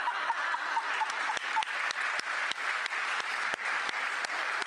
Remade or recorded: remade